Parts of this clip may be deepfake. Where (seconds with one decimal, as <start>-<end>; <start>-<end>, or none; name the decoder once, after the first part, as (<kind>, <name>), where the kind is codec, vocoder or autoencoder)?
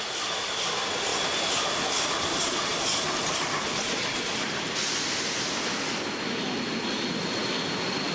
none